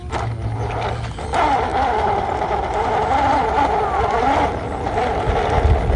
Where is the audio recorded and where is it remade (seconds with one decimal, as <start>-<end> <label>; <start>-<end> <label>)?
0.0-6.0 recorded